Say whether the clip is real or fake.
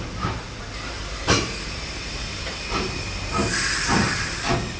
real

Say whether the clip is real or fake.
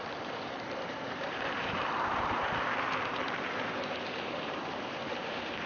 fake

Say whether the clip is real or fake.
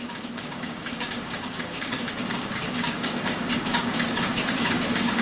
fake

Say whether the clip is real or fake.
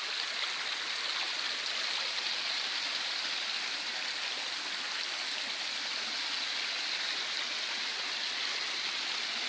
real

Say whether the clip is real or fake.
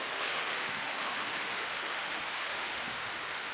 fake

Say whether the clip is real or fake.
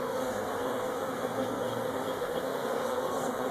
fake